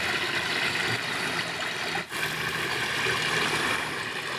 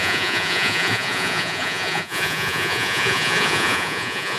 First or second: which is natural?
first